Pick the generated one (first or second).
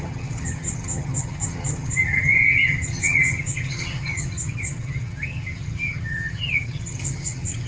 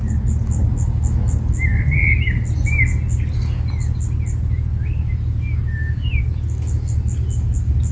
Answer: first